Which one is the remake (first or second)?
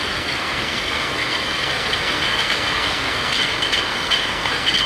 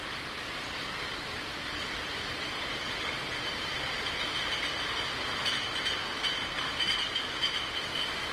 first